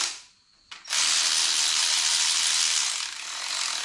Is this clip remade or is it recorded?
recorded